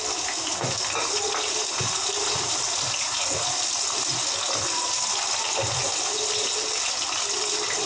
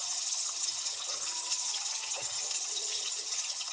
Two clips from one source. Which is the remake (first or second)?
second